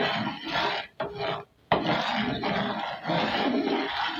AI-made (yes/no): no